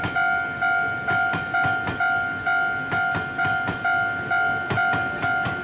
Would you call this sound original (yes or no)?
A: yes